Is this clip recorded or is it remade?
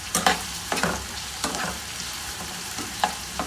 remade